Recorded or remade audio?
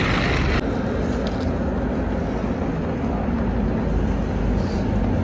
recorded